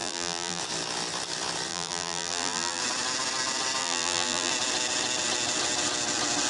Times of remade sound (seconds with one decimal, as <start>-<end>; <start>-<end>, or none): 0.0-0.6; 1.7-2.8; 3.8-4.5